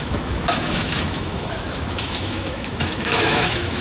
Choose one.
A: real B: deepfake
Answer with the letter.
B